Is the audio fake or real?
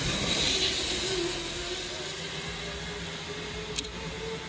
real